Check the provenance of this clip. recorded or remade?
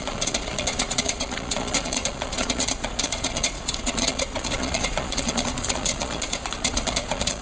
remade